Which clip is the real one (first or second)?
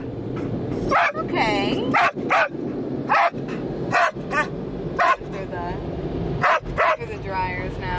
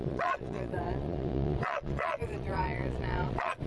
first